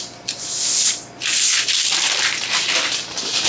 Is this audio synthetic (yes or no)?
no